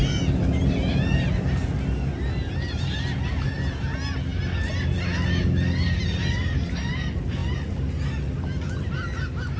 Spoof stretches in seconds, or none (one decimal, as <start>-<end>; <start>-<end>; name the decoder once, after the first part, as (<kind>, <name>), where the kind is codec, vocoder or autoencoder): none

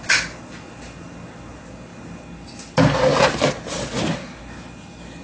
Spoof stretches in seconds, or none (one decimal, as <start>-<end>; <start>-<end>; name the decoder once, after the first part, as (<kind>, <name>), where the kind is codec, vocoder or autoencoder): none

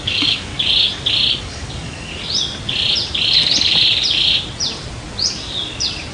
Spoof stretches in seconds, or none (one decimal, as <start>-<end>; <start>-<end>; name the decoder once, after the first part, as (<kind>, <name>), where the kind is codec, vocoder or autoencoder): 0.0-0.5 (codec, DAC); 1.4-2.1

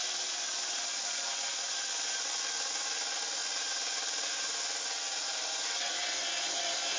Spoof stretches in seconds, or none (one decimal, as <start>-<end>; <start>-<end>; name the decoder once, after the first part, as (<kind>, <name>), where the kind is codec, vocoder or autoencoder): 0.0-2.3 (vocoder, BigVGAN v2)

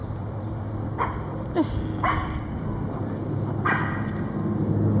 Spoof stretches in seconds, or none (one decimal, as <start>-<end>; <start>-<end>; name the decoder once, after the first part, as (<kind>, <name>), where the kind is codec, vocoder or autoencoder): 0.0-1.7 (vocoder, BigVGAN v2); 2.2-3.2

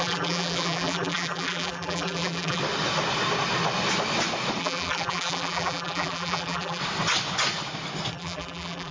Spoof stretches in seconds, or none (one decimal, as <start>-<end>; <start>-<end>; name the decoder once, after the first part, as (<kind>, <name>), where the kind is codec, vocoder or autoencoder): 0.0-2.6 (vocoder, BigVGAN v2); 4.6-6.8; 8.1-8.9